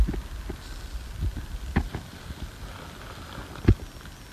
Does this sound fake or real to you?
real